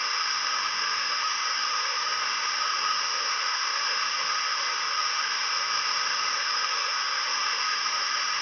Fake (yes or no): yes